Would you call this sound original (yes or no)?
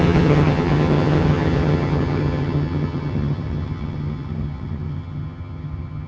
no